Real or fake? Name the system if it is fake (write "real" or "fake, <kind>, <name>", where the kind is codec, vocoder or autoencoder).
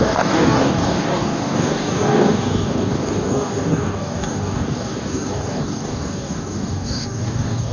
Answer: fake, codec, DAC